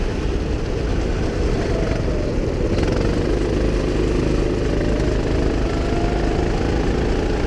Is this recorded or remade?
recorded